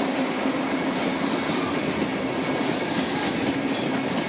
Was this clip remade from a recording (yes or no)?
no